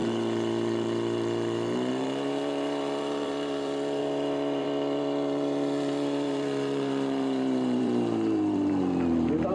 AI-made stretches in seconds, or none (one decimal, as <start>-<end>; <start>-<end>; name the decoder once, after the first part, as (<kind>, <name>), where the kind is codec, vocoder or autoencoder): 0.0-9.5 (vocoder, BigVGAN v2)